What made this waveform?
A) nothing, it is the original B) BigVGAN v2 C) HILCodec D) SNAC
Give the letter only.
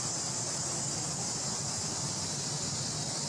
A